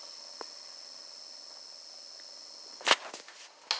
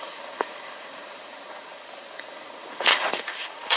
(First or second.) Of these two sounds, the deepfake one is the second